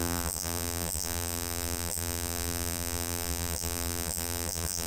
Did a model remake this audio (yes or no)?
yes